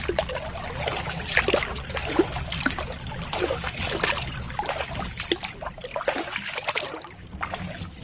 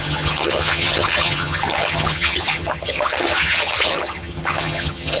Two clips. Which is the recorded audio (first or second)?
first